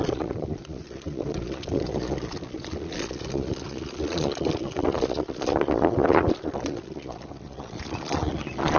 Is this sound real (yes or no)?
no